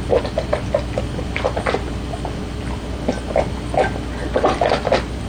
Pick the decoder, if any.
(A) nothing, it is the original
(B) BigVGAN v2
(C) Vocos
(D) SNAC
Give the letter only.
A